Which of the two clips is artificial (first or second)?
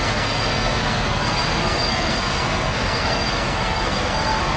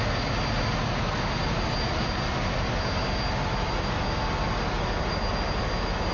first